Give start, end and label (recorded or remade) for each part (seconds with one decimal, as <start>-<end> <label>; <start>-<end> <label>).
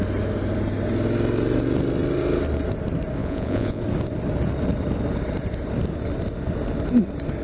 0.0-3.2 recorded; 3.2-3.8 remade; 3.8-7.4 recorded